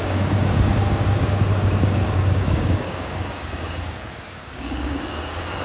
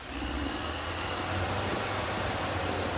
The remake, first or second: first